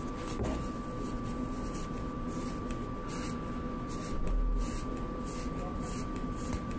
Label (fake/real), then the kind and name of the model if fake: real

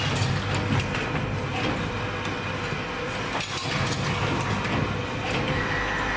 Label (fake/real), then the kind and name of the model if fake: real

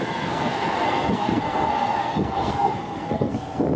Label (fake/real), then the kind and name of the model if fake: fake, codec, SNAC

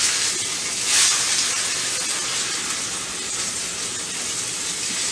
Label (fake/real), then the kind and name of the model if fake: real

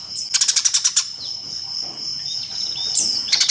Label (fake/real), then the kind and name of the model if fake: real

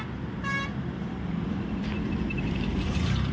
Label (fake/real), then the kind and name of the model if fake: real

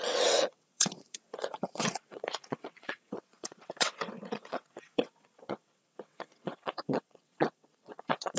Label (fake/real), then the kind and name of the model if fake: fake, vocoder, WaveNeXt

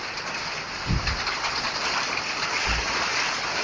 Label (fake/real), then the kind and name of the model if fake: real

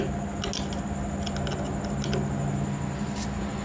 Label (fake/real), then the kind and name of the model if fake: real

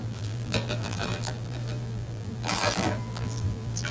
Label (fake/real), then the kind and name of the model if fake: fake, vocoder, BigVGAN v2